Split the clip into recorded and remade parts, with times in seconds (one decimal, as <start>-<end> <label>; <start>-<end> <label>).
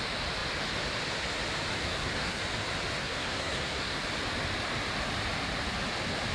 0.0-1.8 recorded; 1.8-2.4 remade; 2.4-3.0 recorded; 3.0-4.0 remade; 4.0-6.3 recorded